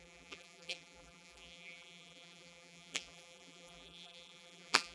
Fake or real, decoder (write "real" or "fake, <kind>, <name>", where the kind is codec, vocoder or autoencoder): fake, vocoder, BigVGAN v2